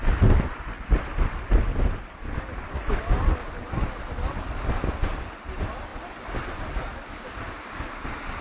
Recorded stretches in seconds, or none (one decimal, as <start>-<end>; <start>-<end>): 0.0-8.4